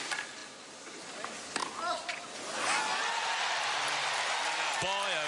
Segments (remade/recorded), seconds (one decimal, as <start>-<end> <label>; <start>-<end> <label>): 0.0-5.3 recorded